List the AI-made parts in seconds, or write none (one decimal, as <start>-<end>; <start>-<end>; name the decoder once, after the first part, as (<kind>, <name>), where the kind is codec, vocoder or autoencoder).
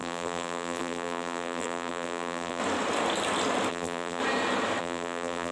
0.0-2.6 (vocoder, BigVGAN v2); 3.7-4.2; 4.8-5.5